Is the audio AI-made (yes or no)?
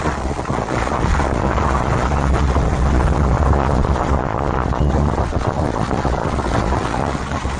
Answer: yes